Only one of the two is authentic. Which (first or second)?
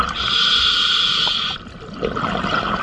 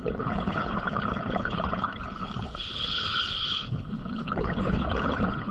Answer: first